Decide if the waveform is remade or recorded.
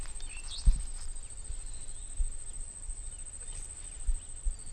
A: recorded